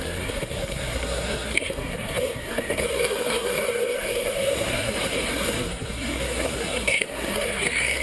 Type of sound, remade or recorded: remade